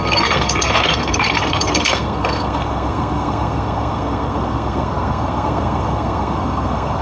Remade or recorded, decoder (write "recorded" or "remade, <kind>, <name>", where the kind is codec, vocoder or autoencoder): remade, codec, SNAC